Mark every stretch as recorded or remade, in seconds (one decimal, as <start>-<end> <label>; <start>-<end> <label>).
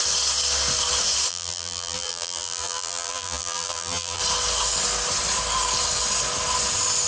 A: 0.0-1.3 recorded; 1.3-4.2 remade; 4.2-7.1 recorded